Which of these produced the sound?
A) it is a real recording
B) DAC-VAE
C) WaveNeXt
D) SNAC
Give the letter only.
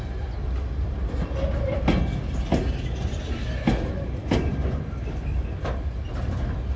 A